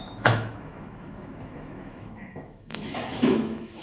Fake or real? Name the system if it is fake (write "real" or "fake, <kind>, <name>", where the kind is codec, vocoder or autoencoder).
fake, autoencoder, DAC-VAE